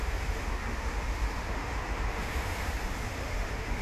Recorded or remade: remade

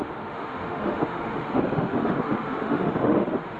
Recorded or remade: remade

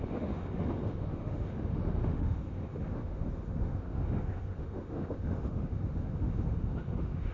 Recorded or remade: remade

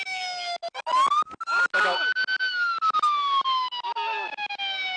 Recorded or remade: recorded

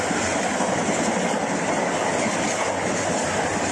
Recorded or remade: recorded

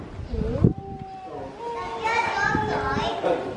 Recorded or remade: recorded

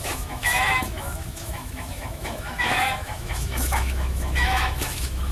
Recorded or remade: remade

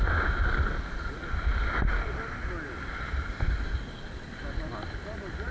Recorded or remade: recorded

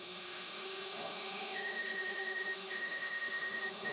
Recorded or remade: remade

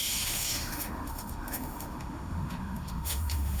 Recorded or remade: remade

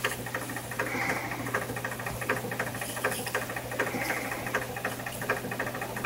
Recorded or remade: recorded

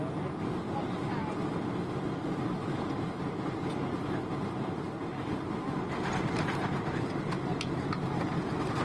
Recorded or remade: recorded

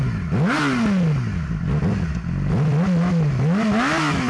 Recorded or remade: recorded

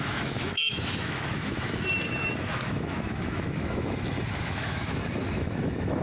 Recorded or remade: remade